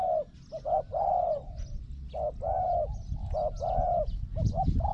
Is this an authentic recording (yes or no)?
yes